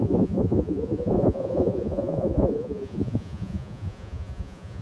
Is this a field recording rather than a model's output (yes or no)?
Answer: no